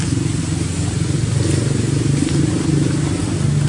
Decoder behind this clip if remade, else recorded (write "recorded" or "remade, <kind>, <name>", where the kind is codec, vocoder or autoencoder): recorded